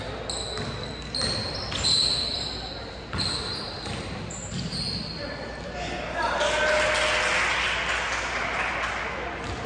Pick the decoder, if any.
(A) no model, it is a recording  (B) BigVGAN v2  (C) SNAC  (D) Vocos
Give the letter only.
A